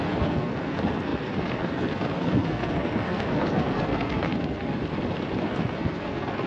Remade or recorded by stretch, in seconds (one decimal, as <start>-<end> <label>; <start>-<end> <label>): 0.0-4.8 remade; 4.8-5.4 recorded; 5.4-6.5 remade